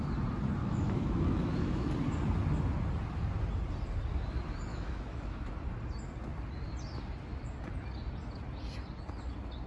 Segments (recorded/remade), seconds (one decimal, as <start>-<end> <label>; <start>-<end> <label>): 0.0-0.6 recorded; 0.6-1.9 remade; 1.9-4.7 recorded; 4.7-5.4 remade; 5.4-9.7 recorded